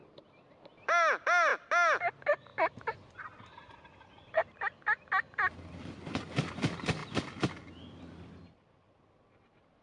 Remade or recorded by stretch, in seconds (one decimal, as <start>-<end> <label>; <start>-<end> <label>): 0.0-9.8 recorded